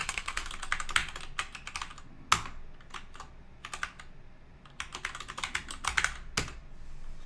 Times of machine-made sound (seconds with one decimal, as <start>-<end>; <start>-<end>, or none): 0.0-0.5